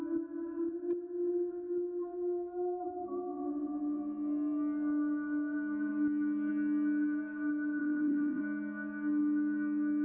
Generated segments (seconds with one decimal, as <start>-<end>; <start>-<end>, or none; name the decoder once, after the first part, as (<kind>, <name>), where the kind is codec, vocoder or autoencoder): 7.8-8.4 (vocoder, BigVGAN v2)